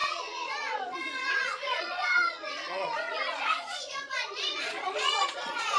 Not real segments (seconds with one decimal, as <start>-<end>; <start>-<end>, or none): 0.0-5.8